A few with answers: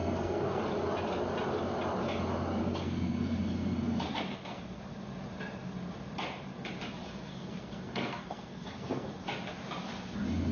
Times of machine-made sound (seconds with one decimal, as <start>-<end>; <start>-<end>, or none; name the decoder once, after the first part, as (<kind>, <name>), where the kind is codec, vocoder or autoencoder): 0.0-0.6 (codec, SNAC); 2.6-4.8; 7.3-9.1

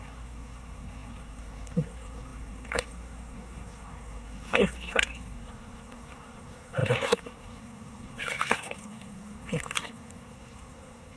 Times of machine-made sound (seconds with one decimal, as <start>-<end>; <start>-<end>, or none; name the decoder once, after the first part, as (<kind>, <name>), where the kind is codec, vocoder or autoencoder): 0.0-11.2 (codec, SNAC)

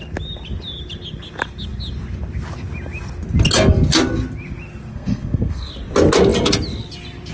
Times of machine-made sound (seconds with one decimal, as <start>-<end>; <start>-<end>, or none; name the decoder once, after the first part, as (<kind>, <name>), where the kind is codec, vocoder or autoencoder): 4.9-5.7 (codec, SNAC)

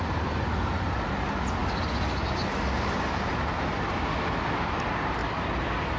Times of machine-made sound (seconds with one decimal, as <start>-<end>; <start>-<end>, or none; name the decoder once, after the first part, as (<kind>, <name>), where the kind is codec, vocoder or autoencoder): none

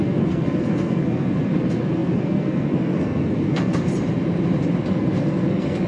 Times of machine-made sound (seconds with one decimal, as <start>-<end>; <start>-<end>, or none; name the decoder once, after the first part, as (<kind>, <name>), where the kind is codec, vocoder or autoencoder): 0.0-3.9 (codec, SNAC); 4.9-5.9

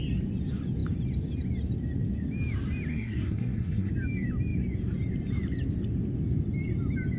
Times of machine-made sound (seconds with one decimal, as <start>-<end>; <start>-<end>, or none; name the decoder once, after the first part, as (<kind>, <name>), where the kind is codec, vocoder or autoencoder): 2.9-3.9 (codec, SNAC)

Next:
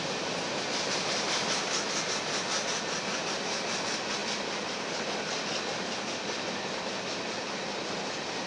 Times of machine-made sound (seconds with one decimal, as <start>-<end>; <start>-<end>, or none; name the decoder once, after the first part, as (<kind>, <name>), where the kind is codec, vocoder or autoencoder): none

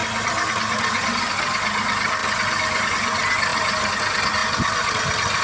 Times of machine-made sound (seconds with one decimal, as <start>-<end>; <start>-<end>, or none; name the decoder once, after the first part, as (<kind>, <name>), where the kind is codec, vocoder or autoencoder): none